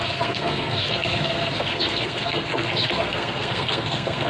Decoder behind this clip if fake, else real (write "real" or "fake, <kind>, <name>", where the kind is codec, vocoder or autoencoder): fake, codec, SNAC